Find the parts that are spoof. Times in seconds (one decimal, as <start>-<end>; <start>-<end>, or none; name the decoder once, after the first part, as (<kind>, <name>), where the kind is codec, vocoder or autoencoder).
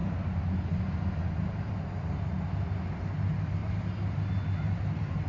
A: none